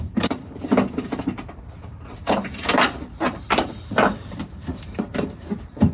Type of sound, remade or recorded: remade